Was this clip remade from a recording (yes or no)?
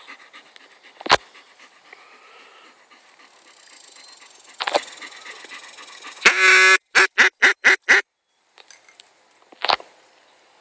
no